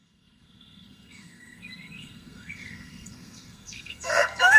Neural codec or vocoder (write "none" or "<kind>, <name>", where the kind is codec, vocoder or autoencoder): codec, SNAC